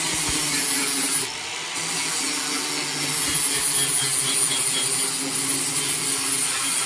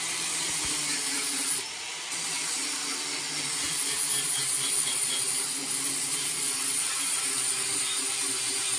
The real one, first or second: first